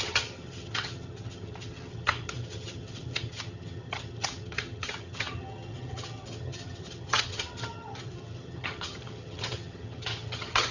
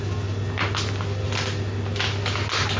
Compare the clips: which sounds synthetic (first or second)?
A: first